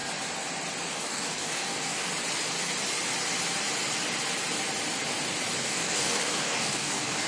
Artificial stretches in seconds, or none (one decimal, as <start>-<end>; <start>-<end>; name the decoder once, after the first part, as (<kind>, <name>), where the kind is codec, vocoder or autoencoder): 0.9-2.1 (codec, DAC); 5.6-7.3